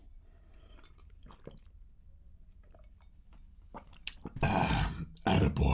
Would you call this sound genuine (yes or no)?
yes